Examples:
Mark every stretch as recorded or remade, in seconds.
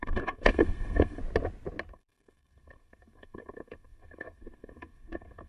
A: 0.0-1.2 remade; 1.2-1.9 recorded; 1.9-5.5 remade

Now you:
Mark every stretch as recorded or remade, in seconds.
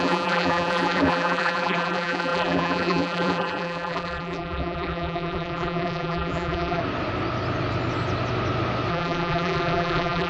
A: 0.0-6.8 remade; 6.8-8.9 recorded; 8.9-10.3 remade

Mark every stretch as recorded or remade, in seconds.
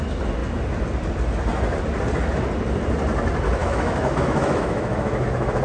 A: 0.0-3.6 recorded; 3.6-5.6 remade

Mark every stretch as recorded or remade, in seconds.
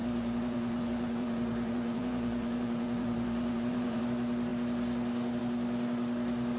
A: 0.0-4.0 remade; 4.0-6.6 recorded